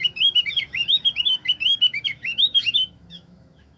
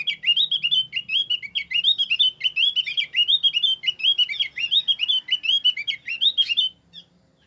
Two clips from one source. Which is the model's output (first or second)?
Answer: first